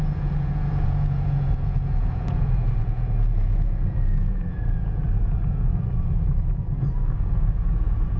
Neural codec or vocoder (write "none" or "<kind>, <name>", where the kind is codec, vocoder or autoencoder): vocoder, Vocos